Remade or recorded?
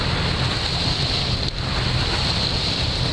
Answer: recorded